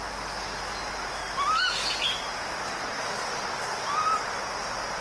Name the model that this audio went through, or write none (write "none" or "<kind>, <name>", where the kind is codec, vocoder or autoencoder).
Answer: none